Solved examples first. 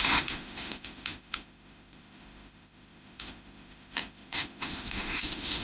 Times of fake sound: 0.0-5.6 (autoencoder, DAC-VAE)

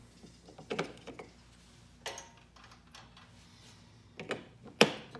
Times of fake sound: none

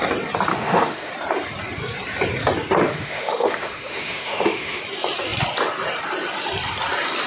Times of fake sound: 0.5-1.1 (autoencoder, DAC-VAE); 2.9-4.8

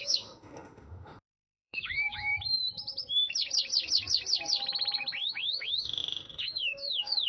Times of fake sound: 0.0-2.3 (autoencoder, DAC-VAE); 5.3-7.3

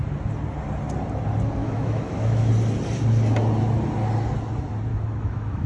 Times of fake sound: 1.6-2.5 (autoencoder, DAC-VAE); 4.9-5.7

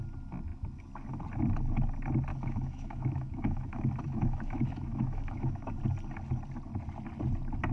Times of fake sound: 2.3-5.8 (autoencoder, DAC-VAE)

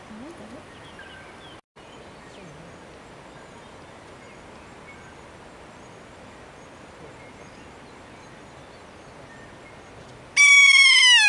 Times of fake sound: 10.5-11.3 (autoencoder, DAC-VAE)